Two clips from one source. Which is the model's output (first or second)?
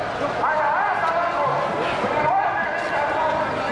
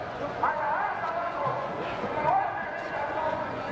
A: second